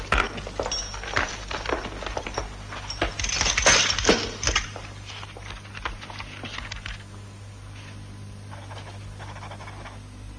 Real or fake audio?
real